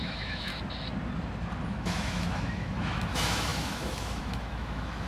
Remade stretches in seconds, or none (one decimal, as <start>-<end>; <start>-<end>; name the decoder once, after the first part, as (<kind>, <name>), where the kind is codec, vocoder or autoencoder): 0.0-0.5 (autoencoder, DAC-VAE); 1.7-5.1